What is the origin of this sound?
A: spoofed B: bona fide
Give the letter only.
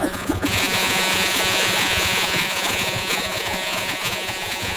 A